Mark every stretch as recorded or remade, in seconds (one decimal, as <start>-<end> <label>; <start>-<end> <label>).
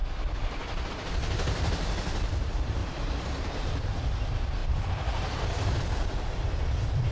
0.0-2.8 recorded; 2.8-4.0 remade; 4.0-4.6 recorded; 4.6-5.4 remade; 5.4-7.1 recorded